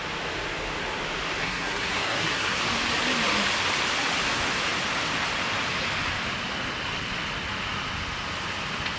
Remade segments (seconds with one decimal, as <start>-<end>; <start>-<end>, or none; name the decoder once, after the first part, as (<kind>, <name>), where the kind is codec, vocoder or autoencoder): 1.4-2.6 (codec, SNAC)